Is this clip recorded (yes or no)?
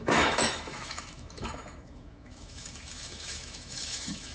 no